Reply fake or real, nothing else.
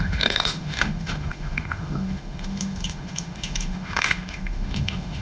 fake